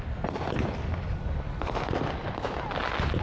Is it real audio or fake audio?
real